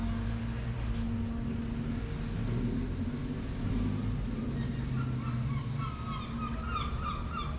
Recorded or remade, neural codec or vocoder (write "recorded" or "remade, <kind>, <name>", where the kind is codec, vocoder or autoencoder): recorded